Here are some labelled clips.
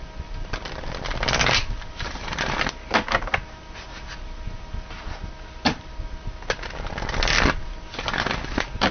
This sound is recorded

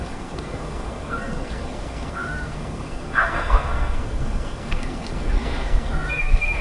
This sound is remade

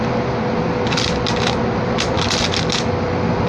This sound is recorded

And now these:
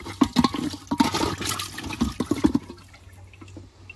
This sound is recorded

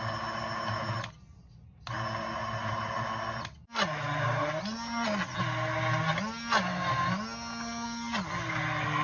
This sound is recorded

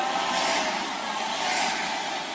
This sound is recorded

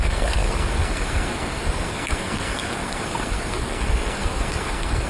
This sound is remade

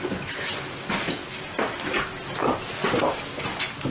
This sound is recorded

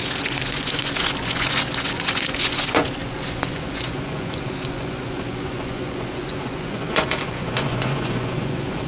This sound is remade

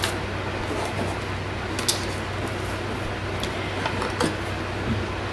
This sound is recorded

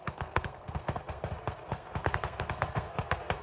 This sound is remade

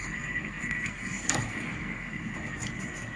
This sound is remade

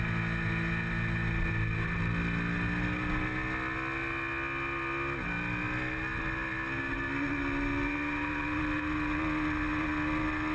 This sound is recorded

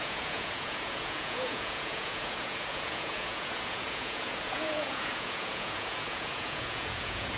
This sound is remade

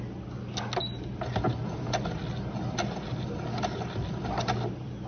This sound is recorded